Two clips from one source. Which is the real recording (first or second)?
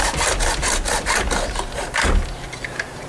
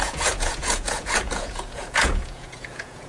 first